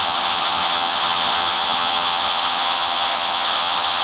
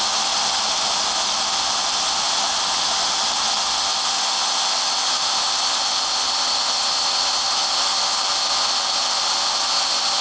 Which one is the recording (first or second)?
second